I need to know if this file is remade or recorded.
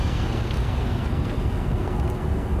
remade